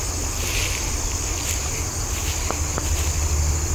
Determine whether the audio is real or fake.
real